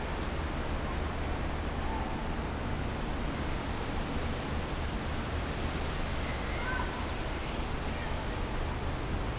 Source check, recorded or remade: recorded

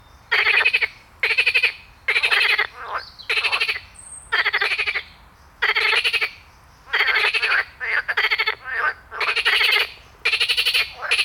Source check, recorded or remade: recorded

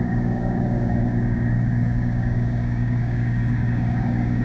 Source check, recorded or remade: remade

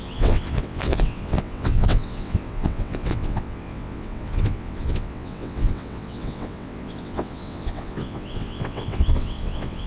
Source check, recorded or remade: remade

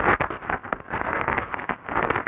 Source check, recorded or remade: remade